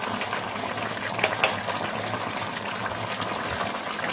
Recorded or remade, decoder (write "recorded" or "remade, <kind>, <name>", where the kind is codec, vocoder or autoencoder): recorded